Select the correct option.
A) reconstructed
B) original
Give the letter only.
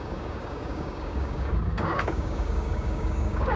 A